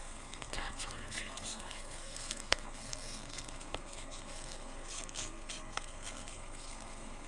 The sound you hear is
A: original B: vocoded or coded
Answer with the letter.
B